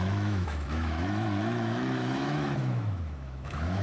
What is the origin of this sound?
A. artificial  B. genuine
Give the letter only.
A